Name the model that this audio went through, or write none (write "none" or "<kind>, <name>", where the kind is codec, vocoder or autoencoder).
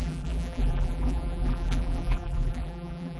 vocoder, BigVGAN v2